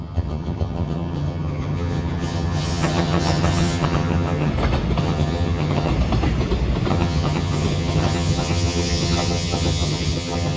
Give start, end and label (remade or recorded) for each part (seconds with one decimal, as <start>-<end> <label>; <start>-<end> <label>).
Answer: 0.0-4.5 remade; 4.5-5.0 recorded; 5.0-5.9 remade; 5.9-6.9 recorded; 6.9-10.6 remade